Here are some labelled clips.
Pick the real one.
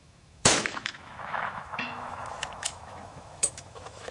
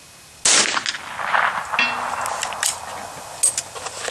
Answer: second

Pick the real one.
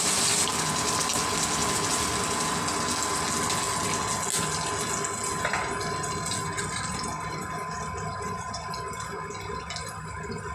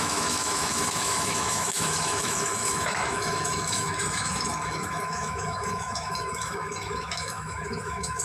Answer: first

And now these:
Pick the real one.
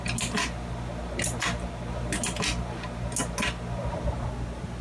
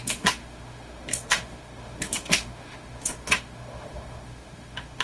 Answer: first